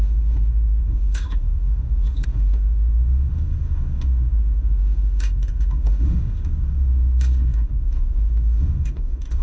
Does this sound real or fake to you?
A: fake